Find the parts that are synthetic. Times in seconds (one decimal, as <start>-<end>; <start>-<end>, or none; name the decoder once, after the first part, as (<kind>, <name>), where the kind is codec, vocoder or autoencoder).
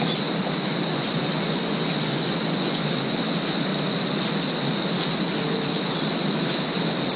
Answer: 0.9-3.2 (vocoder, Vocos)